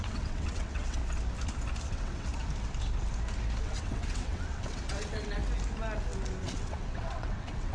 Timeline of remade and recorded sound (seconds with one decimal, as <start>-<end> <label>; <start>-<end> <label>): 0.0-1.0 remade; 1.0-1.9 recorded; 1.9-2.3 remade; 2.3-3.6 recorded; 3.6-5.4 remade; 5.4-6.4 recorded; 6.4-7.7 remade